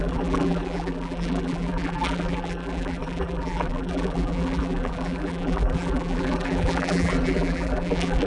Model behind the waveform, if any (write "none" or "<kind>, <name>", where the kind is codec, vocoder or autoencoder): vocoder, BigVGAN v2